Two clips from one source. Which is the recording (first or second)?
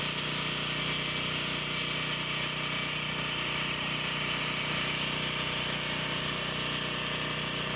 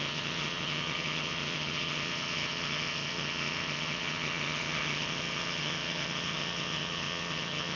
first